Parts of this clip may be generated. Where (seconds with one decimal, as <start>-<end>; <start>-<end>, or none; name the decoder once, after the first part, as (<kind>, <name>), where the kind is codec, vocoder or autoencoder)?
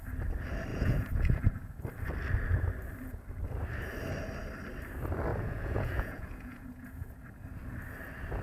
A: 0.7-1.8 (vocoder, Vocos); 5.3-7.2